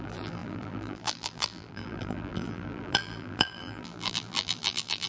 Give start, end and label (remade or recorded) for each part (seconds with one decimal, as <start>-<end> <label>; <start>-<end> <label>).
0.0-5.1 remade